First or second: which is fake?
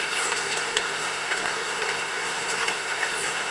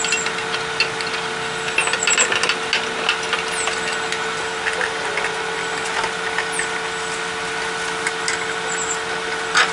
first